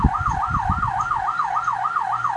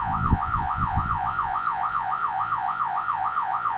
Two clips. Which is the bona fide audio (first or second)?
first